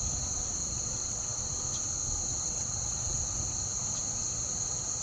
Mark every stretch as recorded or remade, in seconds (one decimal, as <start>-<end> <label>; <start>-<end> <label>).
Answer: 0.0-0.6 recorded; 0.6-1.5 remade; 1.5-2.3 recorded; 2.3-3.2 remade; 3.2-5.0 recorded